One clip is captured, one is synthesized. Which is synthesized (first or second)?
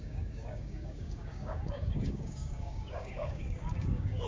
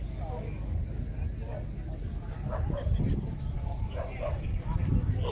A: first